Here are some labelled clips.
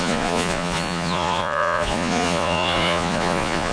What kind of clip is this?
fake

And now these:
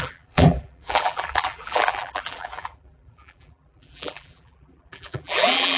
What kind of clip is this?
fake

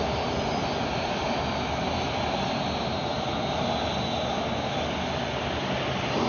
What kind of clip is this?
real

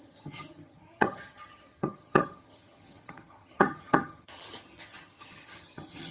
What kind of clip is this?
fake